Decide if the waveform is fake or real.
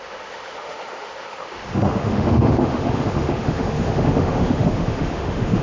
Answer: fake